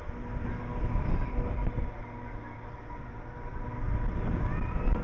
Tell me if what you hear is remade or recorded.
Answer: recorded